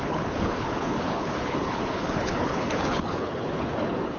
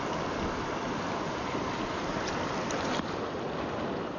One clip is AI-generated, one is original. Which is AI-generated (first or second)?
first